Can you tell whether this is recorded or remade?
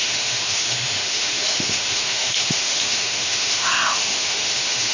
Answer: remade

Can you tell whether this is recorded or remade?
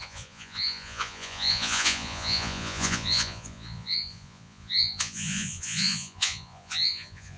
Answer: remade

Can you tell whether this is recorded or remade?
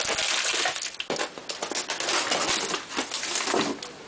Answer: recorded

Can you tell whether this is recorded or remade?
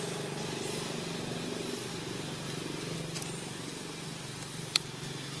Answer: recorded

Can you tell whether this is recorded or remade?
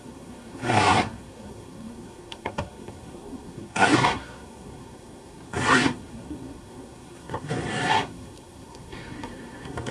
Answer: remade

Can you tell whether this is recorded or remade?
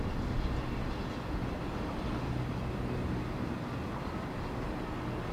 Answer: recorded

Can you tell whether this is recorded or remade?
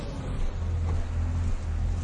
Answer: recorded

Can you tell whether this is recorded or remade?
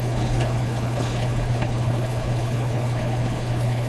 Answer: remade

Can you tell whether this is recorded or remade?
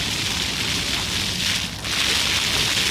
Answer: recorded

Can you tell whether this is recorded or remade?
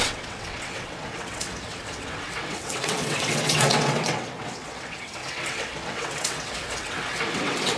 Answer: remade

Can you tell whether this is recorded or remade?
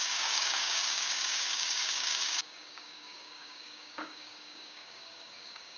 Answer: remade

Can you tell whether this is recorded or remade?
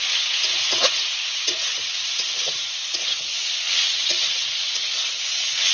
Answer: remade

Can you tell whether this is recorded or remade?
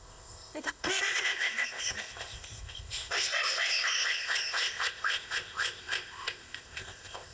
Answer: remade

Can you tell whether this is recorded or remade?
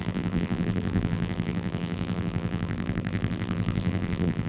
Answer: remade